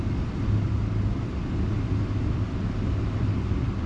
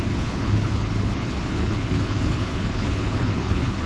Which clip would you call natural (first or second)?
first